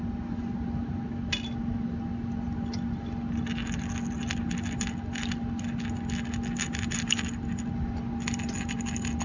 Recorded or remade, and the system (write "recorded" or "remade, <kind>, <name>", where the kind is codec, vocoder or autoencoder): recorded